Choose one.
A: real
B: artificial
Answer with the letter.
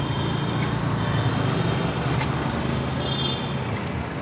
A